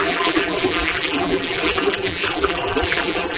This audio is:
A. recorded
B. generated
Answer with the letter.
B